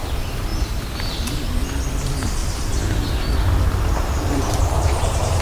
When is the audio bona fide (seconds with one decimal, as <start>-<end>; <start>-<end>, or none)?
0.0-2.4